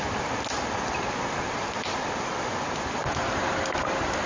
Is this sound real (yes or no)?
yes